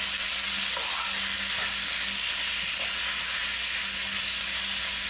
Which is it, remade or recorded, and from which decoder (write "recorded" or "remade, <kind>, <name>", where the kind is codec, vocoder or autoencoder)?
recorded